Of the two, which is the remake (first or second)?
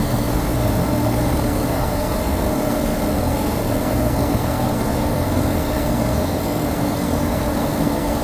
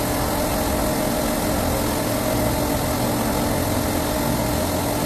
first